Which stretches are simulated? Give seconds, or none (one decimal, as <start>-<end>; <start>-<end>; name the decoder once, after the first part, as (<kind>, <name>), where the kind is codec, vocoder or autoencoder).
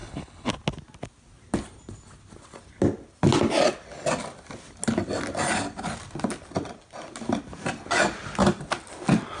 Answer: 0.0-0.5 (codec, HILCodec)